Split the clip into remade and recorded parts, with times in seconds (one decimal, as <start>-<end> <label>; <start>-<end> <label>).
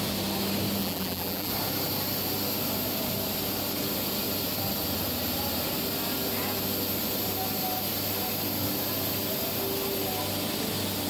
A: 0.0-0.8 recorded; 0.8-1.5 remade; 1.5-11.1 recorded